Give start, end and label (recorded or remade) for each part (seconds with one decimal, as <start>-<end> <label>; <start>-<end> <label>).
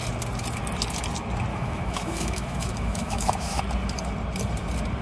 0.0-1.5 recorded; 1.5-3.6 remade; 3.6-5.0 recorded